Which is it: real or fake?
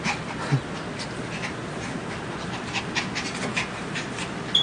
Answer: real